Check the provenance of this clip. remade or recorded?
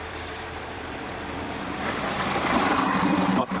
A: remade